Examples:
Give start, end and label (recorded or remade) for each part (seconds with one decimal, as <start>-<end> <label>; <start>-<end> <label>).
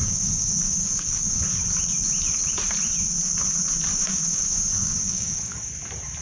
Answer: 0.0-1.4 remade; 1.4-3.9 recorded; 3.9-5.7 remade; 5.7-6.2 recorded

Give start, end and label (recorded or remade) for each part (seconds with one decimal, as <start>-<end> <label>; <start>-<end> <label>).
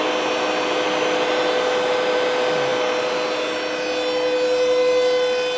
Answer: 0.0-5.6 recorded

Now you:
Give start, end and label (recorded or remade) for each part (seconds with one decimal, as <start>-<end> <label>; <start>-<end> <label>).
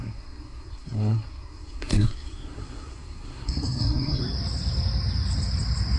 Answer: 0.0-4.2 remade; 4.2-6.0 recorded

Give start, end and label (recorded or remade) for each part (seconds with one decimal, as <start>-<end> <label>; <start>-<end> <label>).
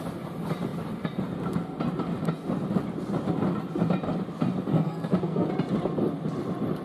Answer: 0.0-4.7 recorded; 4.7-5.5 remade; 5.5-6.8 recorded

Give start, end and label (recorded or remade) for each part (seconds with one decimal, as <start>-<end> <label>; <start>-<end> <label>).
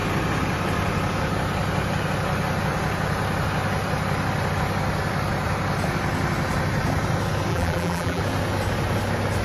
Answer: 0.0-7.5 recorded; 7.5-8.2 remade; 8.2-9.4 recorded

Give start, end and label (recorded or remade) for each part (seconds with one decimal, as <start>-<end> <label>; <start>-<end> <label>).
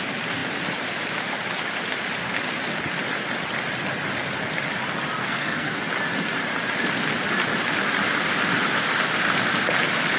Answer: 0.0-5.2 recorded; 5.2-5.8 remade; 5.8-10.2 recorded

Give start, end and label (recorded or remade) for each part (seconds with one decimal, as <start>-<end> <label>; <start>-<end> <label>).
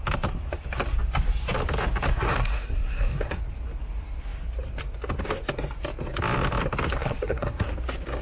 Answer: 0.0-2.1 recorded; 2.1-3.4 remade; 3.4-7.0 recorded; 7.0-7.7 remade; 7.7-8.2 recorded